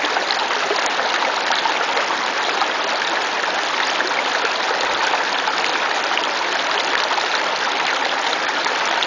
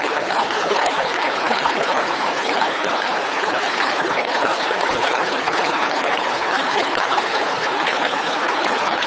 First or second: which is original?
first